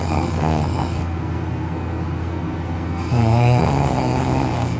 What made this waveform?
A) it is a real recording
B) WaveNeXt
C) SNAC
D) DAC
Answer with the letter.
C